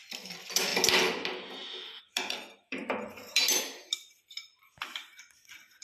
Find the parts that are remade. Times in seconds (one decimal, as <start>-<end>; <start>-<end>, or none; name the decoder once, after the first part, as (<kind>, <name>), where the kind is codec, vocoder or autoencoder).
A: 0.0-0.7 (vocoder, BigVGAN v2); 2.0-5.8